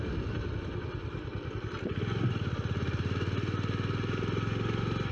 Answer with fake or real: real